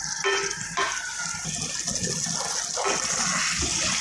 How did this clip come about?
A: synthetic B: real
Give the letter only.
B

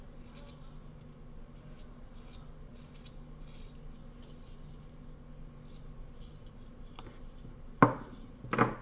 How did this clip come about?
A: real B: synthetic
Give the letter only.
A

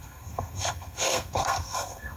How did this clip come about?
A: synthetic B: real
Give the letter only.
A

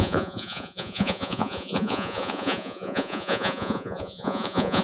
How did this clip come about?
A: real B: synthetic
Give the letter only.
B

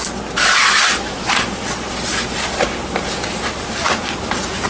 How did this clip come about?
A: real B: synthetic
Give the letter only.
A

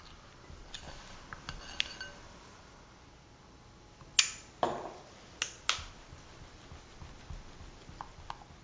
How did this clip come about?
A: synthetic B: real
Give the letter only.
B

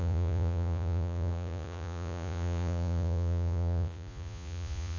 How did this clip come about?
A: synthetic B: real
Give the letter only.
A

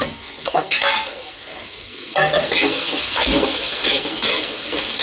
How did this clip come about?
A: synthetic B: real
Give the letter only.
A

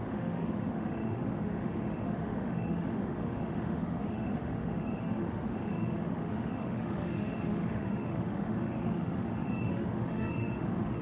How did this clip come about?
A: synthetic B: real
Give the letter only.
A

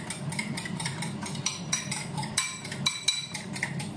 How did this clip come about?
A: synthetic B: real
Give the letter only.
B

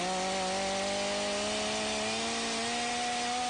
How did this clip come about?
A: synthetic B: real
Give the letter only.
B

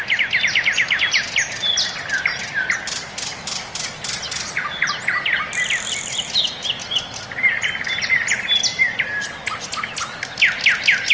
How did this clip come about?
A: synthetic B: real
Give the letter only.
B